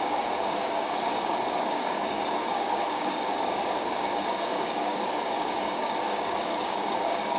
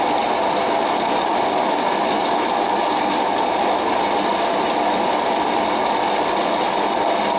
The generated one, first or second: first